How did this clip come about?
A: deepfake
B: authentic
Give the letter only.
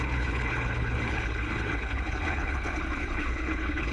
A